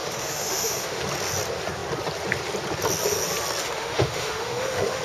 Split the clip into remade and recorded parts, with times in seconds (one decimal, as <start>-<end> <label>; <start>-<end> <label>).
0.0-1.0 remade; 1.0-3.6 recorded; 3.6-5.0 remade